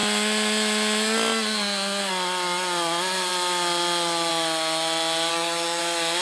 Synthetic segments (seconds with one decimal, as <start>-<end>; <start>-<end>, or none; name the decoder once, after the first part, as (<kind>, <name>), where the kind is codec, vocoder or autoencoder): 5.3-5.8 (codec, SNAC)